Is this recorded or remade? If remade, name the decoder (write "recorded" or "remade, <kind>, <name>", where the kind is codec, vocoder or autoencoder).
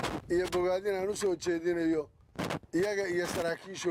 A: recorded